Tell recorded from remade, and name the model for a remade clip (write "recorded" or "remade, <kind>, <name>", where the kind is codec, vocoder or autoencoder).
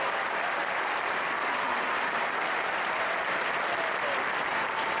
recorded